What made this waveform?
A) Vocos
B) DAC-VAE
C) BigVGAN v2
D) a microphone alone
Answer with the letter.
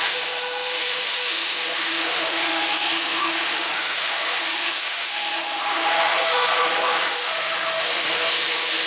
B